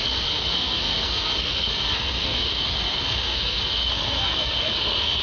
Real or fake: fake